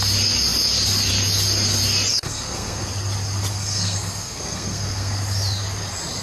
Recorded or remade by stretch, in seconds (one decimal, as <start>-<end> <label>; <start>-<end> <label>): 0.0-2.1 recorded; 2.1-2.9 remade; 2.9-3.5 recorded; 3.5-5.2 remade; 5.2-6.2 recorded